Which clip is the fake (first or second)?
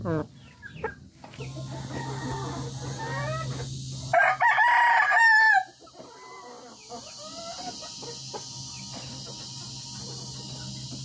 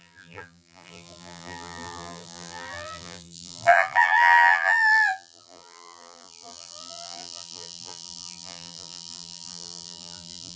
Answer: second